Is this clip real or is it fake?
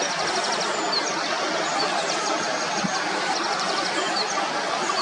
real